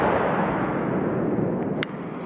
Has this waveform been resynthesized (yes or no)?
no